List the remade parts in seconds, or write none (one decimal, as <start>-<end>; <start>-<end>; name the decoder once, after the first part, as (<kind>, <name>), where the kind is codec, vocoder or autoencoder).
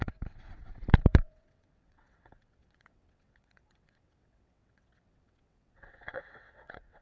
0.0-7.0 (vocoder, WaveNeXt)